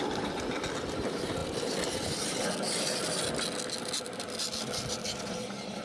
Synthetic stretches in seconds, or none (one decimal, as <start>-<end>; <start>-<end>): none